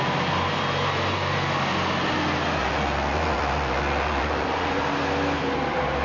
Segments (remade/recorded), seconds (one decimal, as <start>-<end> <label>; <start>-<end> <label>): 0.0-2.6 recorded; 2.6-4.8 remade; 4.8-6.0 recorded